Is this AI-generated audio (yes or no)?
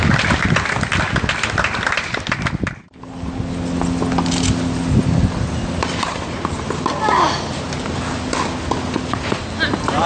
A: no